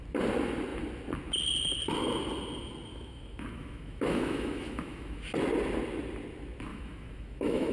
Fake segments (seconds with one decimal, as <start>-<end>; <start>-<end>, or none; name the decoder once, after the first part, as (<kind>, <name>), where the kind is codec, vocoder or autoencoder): 2.9-5.2 (autoencoder, DAC-VAE); 6.7-7.7